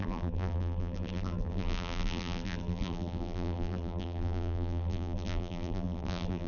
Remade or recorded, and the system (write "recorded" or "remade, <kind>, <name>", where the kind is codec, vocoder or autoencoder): remade, vocoder, BigVGAN v2